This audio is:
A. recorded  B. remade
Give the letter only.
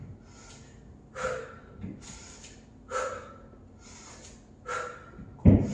A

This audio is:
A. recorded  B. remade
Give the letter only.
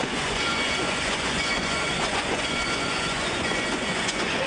B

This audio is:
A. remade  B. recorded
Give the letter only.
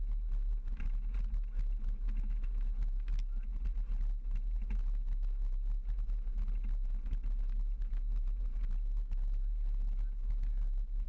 B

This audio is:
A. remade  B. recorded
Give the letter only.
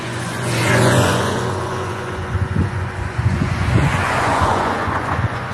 A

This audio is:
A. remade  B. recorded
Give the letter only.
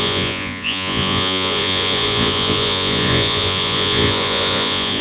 A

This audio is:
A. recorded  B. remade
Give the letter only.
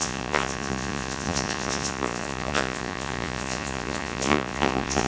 B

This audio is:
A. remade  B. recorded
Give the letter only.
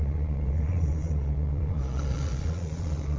A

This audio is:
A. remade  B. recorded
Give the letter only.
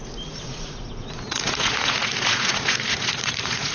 A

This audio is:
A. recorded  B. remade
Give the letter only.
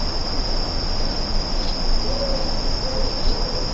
A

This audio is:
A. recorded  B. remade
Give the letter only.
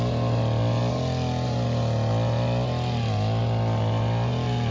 A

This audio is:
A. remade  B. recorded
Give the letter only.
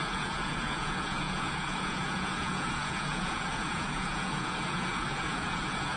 A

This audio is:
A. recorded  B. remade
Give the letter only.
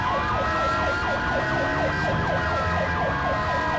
A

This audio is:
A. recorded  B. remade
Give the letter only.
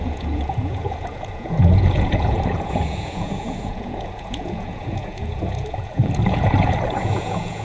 B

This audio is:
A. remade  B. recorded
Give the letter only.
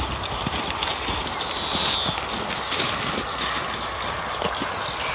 B